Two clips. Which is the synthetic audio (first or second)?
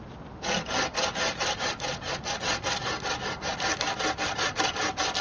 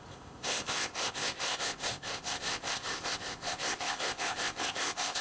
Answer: second